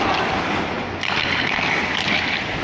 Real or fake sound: real